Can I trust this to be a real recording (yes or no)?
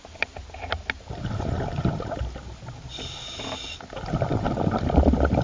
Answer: yes